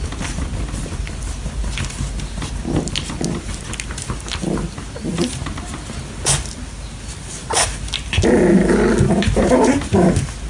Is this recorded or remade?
recorded